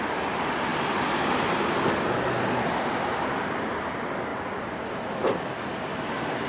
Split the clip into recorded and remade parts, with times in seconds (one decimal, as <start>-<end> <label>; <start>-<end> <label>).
0.0-0.7 recorded; 0.7-1.5 remade; 1.5-6.5 recorded